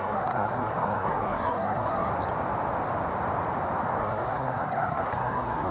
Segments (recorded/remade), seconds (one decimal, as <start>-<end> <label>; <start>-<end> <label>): 0.0-2.1 remade; 2.1-4.0 recorded; 4.0-5.7 remade